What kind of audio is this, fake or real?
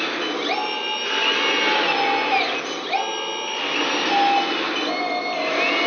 real